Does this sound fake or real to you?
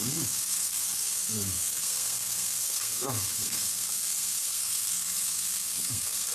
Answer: fake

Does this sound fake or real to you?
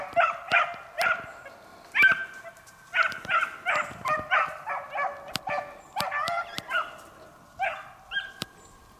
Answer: real